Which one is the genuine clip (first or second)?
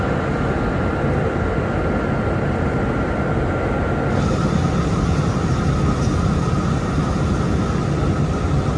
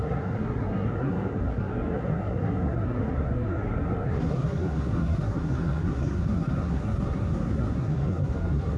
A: first